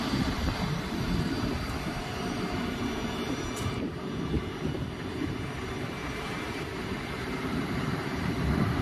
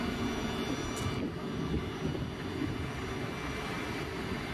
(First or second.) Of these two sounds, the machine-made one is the first